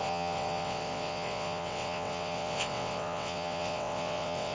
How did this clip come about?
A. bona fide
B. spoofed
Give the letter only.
B